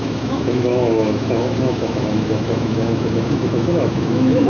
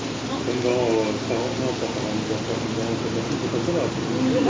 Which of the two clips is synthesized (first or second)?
first